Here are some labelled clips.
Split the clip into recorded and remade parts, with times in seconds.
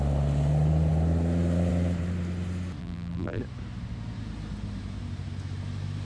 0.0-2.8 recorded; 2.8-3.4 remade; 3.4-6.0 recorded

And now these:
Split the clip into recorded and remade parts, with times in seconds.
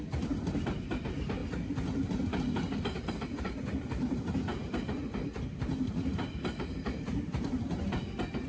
0.0-1.4 remade; 1.4-3.1 recorded; 3.1-8.5 remade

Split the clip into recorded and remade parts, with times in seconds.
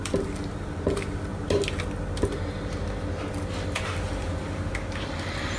0.0-5.6 recorded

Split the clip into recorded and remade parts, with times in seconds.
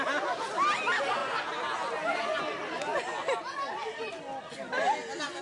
0.0-5.4 recorded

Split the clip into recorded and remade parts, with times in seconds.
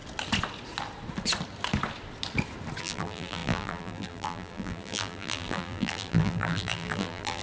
0.0-2.8 recorded; 2.8-7.4 remade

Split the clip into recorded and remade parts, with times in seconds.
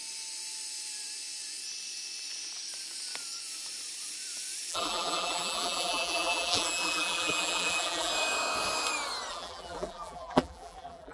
0.0-4.7 recorded; 4.7-8.1 remade; 8.1-9.3 recorded; 9.3-11.1 remade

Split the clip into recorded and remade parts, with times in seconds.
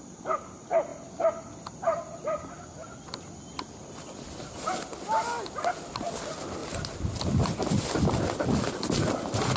0.0-6.6 recorded; 6.6-9.6 remade